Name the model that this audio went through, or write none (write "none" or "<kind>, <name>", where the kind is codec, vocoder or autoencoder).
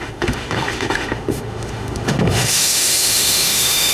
autoencoder, DAC-VAE